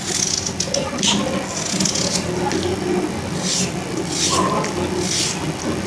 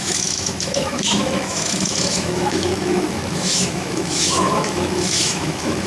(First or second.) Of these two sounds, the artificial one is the second